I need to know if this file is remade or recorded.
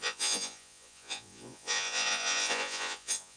remade